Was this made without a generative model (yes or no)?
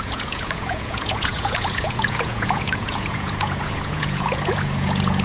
no